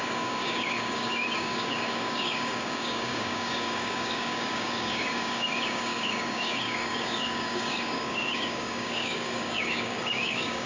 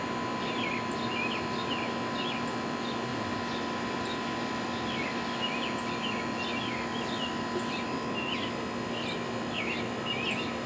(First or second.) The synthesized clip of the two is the first